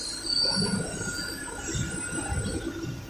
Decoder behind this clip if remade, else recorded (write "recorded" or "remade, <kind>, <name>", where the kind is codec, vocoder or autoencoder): recorded